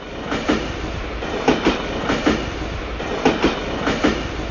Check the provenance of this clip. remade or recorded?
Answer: recorded